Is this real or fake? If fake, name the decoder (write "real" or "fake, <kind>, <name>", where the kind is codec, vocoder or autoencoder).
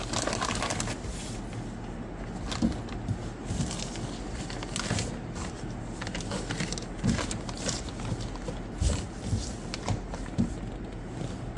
real